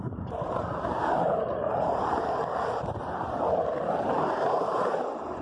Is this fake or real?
fake